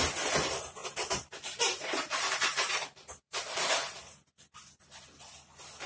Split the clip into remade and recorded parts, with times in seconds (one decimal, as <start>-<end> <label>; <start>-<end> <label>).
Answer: 0.0-0.8 recorded; 0.8-3.6 remade; 3.6-5.9 recorded